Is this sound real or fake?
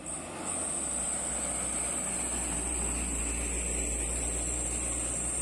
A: real